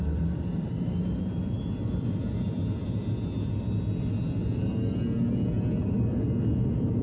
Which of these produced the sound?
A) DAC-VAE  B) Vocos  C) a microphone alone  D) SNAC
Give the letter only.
C